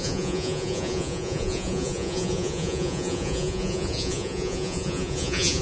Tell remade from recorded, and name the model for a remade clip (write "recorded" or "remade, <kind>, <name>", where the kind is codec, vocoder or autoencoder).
remade, vocoder, Vocos